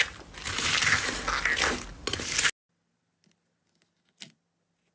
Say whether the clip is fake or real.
real